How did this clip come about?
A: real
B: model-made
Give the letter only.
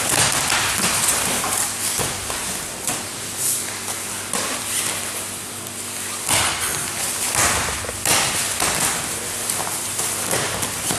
A